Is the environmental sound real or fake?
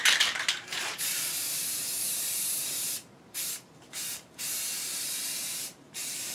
fake